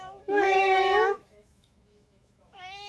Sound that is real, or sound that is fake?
fake